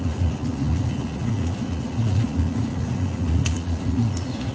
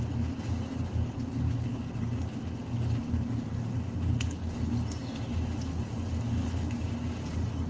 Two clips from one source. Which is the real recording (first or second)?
second